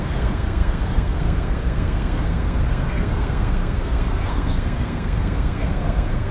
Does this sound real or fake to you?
fake